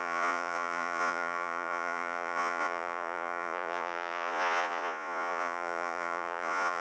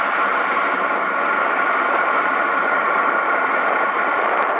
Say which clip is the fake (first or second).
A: first